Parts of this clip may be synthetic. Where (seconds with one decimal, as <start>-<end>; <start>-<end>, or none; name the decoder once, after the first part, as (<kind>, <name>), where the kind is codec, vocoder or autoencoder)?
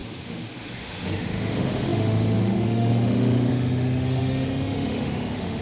0.0-5.6 (autoencoder, DAC-VAE)